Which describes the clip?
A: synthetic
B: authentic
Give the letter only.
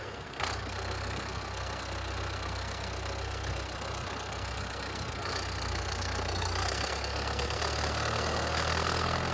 A